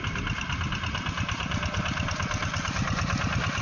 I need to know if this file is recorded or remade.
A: recorded